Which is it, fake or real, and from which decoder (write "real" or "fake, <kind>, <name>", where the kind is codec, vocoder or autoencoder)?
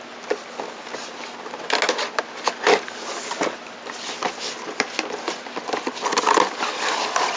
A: real